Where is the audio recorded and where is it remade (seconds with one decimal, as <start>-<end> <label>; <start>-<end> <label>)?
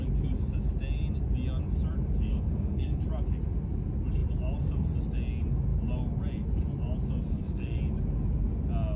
0.0-2.3 recorded; 2.3-3.0 remade; 3.0-7.3 recorded; 7.3-7.8 remade; 7.8-9.0 recorded